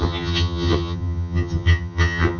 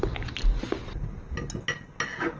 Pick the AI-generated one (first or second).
first